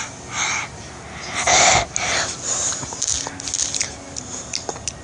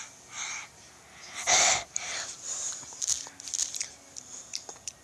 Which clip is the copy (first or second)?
second